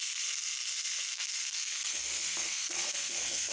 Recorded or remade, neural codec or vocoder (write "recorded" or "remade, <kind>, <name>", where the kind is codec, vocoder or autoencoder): remade, codec, SNAC